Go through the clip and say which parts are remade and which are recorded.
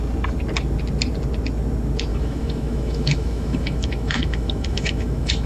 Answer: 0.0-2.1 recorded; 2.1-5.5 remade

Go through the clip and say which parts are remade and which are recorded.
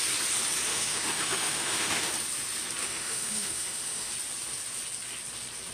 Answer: 0.0-0.7 recorded; 0.7-2.1 remade; 2.1-2.8 recorded; 2.8-4.1 remade; 4.1-5.7 recorded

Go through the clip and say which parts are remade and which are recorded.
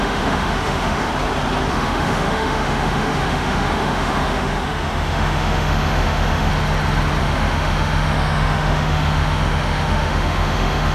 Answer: 0.0-1.1 remade; 1.1-1.7 recorded; 1.7-6.5 remade; 6.5-7.2 recorded; 7.2-10.9 remade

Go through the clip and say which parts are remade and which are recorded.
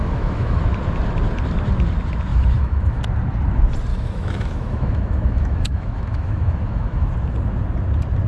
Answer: 0.0-0.6 remade; 0.6-2.3 recorded; 2.3-3.0 remade; 3.0-3.9 recorded; 3.9-7.1 remade; 7.1-8.3 recorded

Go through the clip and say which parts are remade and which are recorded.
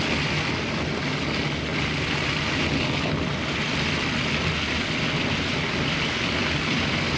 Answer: 0.0-7.2 recorded